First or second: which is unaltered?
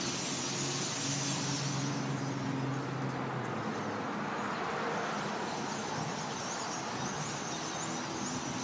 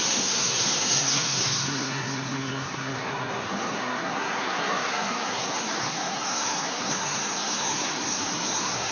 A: first